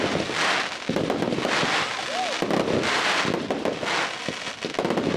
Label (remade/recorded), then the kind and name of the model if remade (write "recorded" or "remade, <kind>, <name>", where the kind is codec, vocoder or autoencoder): recorded